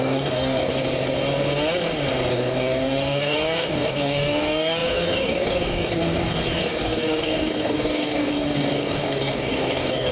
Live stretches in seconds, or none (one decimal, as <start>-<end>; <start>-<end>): 0.7-2.3